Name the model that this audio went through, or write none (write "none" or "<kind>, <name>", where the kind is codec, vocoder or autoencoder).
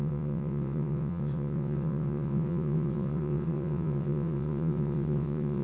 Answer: vocoder, WaveNeXt